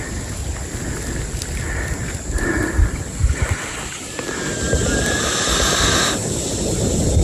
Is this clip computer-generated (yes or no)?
no